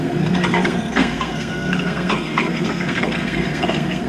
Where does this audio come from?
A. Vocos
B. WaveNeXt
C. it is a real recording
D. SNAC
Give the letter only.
D